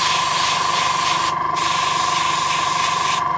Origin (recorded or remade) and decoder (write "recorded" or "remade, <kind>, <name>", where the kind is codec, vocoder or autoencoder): remade, vocoder, BigVGAN v2